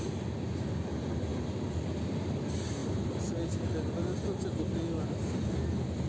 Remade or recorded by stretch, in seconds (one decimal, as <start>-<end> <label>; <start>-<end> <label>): 0.0-6.1 recorded